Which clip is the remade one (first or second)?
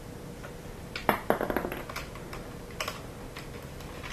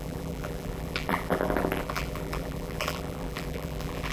second